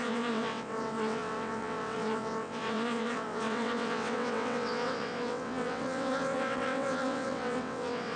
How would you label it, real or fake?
fake